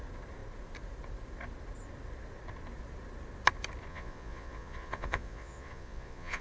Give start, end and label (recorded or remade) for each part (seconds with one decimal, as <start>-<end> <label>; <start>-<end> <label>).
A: 0.0-3.9 recorded; 3.9-6.4 remade